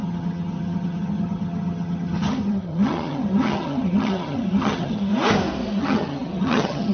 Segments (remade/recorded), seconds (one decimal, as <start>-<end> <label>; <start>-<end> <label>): 0.0-5.1 remade; 5.1-5.8 recorded; 5.8-6.9 remade